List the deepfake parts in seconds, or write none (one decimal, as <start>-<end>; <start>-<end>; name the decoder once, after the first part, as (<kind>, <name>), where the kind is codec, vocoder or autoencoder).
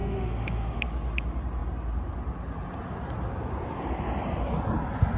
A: 0.0-0.8 (autoencoder, DAC-VAE)